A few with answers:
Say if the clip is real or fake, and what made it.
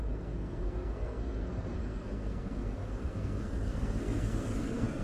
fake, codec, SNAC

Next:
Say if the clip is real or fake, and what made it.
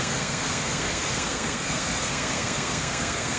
fake, codec, SNAC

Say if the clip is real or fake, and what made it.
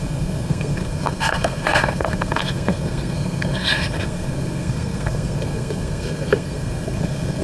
fake, codec, SNAC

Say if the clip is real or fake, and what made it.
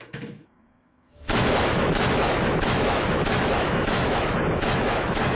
fake, autoencoder, DAC-VAE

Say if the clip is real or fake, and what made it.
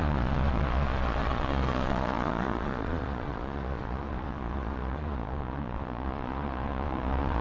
fake, vocoder, Vocos